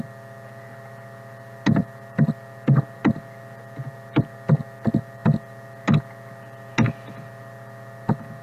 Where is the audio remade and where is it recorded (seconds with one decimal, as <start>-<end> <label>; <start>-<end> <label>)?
0.0-8.4 recorded